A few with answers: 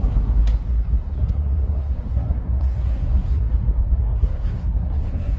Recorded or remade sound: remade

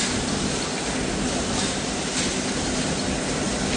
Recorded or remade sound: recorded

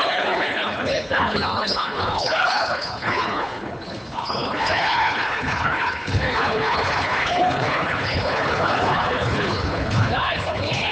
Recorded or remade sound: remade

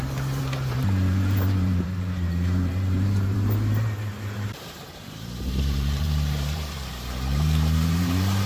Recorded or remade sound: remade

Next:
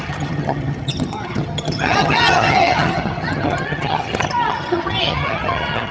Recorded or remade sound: remade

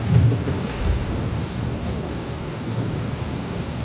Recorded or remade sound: remade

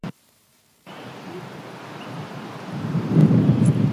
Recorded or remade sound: remade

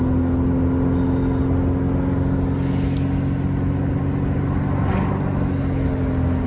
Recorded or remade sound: recorded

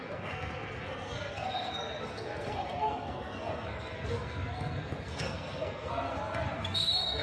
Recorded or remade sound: remade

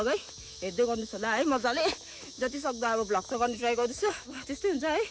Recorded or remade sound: remade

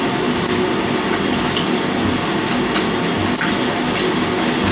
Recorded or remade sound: recorded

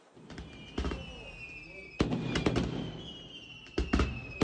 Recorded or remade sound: recorded